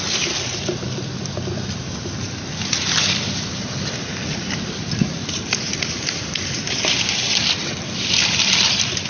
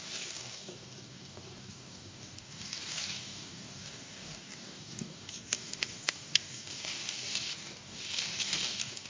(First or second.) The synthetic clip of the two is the second